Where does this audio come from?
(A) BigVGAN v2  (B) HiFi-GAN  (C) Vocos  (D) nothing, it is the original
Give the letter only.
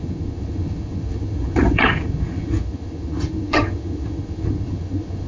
B